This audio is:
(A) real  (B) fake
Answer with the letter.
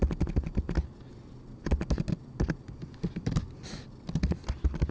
A